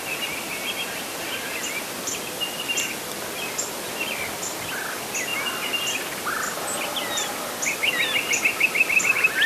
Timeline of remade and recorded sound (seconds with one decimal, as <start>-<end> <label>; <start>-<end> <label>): 0.0-9.5 recorded